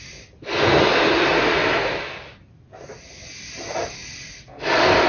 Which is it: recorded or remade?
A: recorded